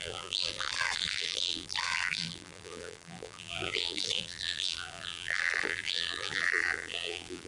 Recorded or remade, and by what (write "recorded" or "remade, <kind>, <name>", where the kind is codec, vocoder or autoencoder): remade, vocoder, BigVGAN v2